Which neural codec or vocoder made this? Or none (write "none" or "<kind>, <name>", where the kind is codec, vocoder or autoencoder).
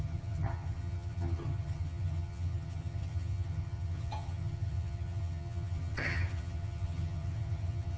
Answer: vocoder, HiFi-GAN